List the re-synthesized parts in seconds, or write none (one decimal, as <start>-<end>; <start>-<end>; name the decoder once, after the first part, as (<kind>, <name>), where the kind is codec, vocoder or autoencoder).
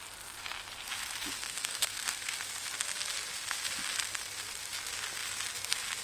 1.3-2.3 (codec, SNAC)